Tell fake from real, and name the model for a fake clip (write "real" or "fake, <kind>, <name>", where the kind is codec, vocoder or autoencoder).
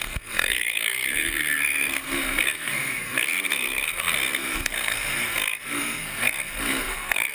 fake, codec, SNAC